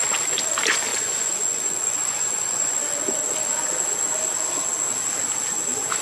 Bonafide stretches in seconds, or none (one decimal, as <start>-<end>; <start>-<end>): 0.0-0.9; 2.8-6.0